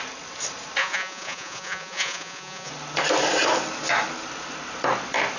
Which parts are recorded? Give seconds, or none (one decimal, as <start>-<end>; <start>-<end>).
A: 0.0-0.8; 2.7-5.4